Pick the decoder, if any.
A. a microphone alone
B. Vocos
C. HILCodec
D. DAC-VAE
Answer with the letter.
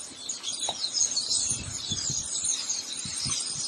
A